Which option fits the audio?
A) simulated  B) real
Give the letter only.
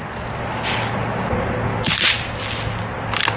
B